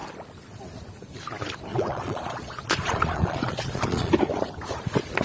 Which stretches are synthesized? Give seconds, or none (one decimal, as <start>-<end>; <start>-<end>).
1.7-4.1

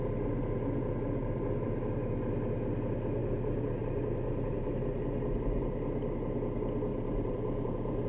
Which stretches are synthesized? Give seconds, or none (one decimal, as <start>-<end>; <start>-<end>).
1.2-1.8; 3.2-4.7; 6.9-8.1

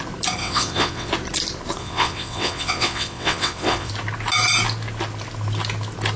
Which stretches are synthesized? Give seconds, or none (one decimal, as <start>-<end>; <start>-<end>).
0.4-1.1; 1.8-3.9